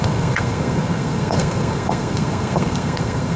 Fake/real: fake